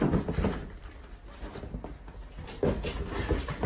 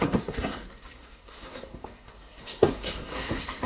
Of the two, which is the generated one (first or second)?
second